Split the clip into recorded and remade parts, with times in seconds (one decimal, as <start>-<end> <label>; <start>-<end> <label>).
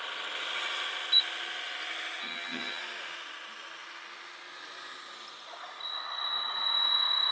0.0-2.2 recorded; 2.2-2.8 remade; 2.8-7.3 recorded